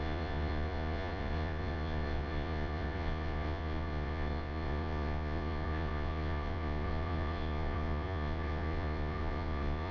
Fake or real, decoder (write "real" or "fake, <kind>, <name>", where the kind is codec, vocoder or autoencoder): fake, vocoder, Vocos